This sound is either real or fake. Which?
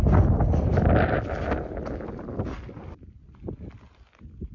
real